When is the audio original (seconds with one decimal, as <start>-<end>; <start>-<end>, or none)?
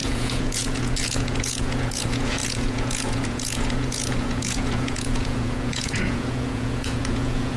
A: none